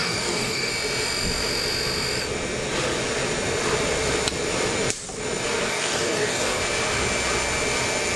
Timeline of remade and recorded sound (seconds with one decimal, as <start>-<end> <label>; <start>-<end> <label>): 0.0-0.7 remade; 0.7-5.7 recorded; 5.7-6.6 remade; 6.6-8.2 recorded